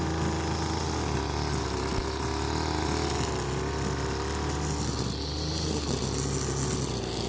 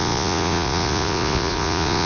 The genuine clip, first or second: first